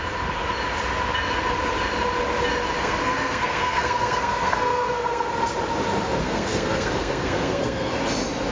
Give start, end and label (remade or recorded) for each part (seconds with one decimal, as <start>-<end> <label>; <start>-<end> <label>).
0.0-2.8 recorded; 2.8-5.3 remade; 5.3-6.2 recorded; 6.2-7.9 remade; 7.9-8.5 recorded